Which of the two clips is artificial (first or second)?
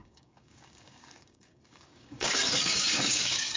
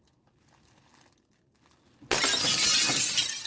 first